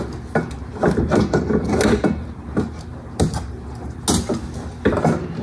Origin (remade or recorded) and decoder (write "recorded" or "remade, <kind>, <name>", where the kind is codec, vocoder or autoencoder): recorded